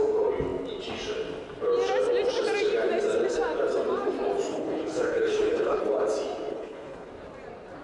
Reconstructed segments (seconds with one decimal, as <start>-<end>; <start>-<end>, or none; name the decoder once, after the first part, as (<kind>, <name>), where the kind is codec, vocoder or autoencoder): 4.5-5.8 (codec, HILCodec); 6.5-7.1